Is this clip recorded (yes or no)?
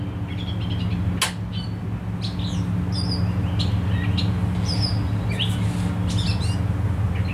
yes